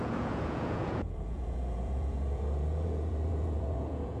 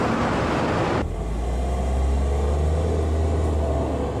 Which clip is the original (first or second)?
second